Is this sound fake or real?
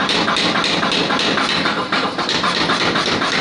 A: real